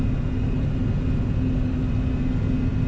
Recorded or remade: recorded